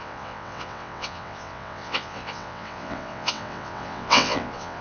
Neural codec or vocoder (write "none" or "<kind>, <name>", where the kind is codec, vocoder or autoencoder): vocoder, WaveNeXt